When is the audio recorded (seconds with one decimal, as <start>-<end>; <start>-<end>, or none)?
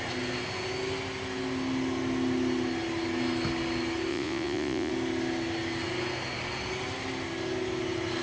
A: 0.0-4.1; 4.9-8.2